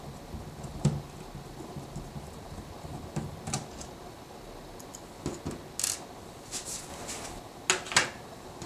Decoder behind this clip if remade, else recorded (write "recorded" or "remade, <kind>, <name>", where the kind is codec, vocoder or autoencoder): recorded